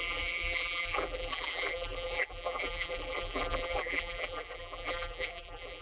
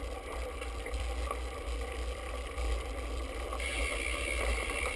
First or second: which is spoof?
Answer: first